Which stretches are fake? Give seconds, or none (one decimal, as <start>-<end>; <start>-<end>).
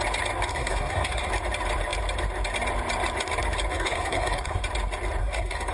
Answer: 0.5-1.3; 3.7-4.6; 5.2-5.7